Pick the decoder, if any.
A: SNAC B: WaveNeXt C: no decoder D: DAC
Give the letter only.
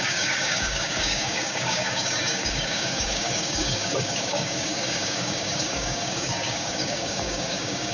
D